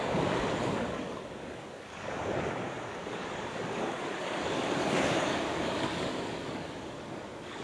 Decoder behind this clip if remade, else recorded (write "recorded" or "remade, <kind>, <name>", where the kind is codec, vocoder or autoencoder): remade, codec, DAC